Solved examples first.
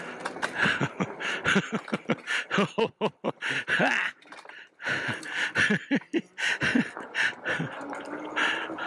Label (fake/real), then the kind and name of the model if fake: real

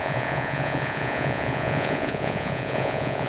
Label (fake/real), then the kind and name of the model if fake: fake, vocoder, Vocos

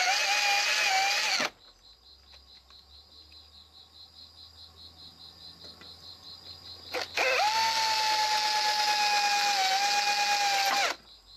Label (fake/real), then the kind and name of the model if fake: real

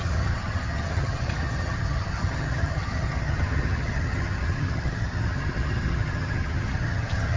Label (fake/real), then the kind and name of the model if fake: fake, vocoder, HiFi-GAN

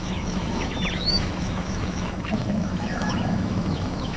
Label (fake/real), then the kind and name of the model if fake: fake, autoencoder, DAC-VAE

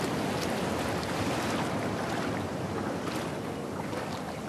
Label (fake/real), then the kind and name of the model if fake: real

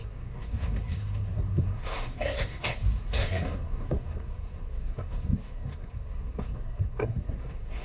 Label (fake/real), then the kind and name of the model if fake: fake, codec, SNAC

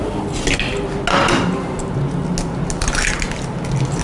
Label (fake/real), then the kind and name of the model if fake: real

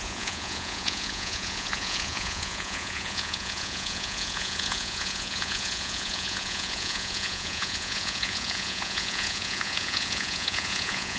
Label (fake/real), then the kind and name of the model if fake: fake, vocoder, Vocos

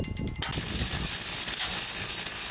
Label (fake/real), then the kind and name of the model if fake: real